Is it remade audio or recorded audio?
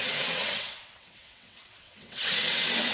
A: remade